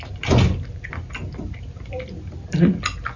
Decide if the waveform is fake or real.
real